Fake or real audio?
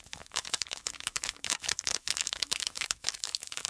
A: fake